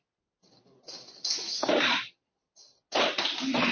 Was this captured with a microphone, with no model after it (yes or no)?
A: yes